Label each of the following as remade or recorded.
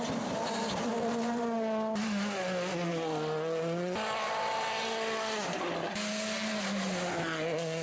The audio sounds recorded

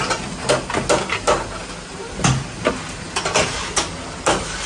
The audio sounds recorded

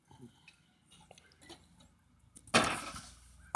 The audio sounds recorded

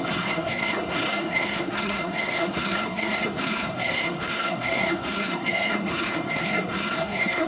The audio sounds remade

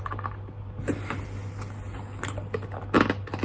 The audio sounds recorded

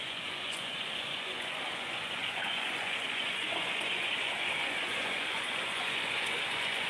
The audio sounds remade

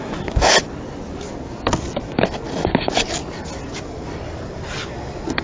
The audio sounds recorded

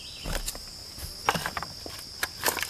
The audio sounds recorded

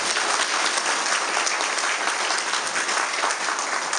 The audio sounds recorded